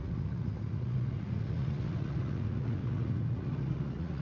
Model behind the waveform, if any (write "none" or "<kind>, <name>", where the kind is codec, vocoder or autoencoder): vocoder, Vocos